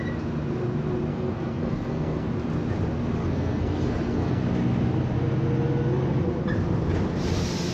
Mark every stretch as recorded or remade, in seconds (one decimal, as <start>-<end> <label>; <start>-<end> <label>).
0.0-1.1 recorded; 1.1-2.3 remade; 2.3-3.2 recorded; 3.2-4.4 remade; 4.4-7.7 recorded